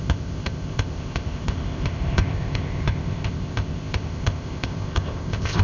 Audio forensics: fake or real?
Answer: fake